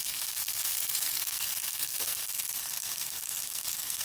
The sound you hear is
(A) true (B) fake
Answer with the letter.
B